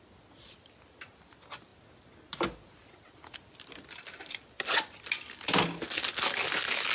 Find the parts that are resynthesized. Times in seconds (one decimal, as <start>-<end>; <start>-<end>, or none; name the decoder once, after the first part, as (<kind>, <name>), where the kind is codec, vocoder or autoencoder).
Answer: none

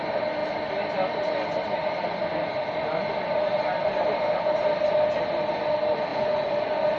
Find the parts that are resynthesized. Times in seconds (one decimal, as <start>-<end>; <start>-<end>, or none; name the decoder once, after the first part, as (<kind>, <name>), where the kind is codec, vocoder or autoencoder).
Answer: 6.1-7.0 (vocoder, Vocos)

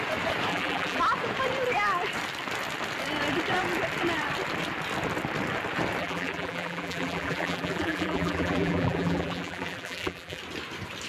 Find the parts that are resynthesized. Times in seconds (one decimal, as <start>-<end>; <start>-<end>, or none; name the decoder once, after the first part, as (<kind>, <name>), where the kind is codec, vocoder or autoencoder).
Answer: 0.5-1.0 (vocoder, BigVGAN v2); 6.0-10.4